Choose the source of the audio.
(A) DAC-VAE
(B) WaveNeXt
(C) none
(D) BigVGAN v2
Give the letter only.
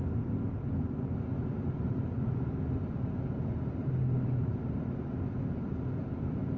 C